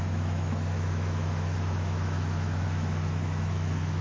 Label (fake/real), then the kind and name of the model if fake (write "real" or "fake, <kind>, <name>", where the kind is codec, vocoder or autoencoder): fake, autoencoder, DAC-VAE